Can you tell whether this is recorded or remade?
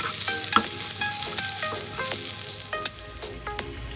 recorded